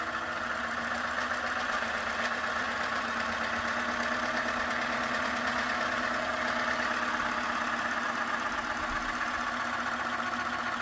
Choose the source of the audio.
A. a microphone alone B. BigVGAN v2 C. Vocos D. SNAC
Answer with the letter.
A